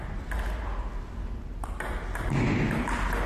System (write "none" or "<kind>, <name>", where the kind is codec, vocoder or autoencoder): none